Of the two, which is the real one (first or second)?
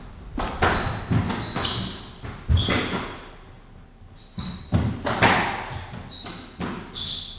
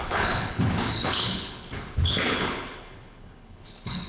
first